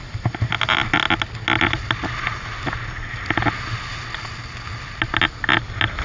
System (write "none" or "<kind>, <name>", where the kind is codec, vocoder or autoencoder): none